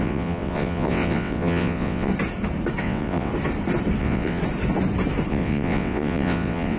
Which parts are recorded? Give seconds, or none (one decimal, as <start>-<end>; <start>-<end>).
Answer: 2.1-2.8; 3.3-4.0; 4.4-5.3